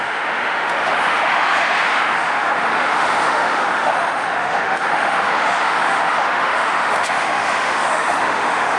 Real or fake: fake